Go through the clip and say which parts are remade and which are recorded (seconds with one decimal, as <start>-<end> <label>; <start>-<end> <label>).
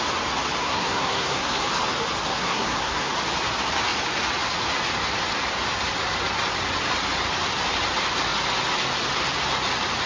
0.0-0.6 recorded; 0.6-1.7 remade; 1.7-2.3 recorded; 2.3-3.1 remade; 3.1-10.1 recorded